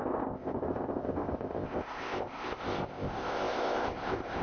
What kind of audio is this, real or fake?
fake